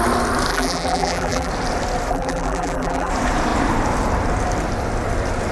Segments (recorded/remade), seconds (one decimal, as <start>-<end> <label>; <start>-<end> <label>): 0.0-0.5 recorded; 0.5-1.5 remade; 1.5-2.1 recorded; 2.1-3.1 remade; 3.1-5.5 recorded